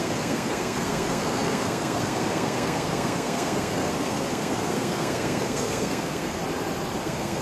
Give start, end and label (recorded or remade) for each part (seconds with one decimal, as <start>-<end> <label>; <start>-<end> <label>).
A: 0.0-6.4 remade; 6.4-7.0 recorded; 7.0-7.4 remade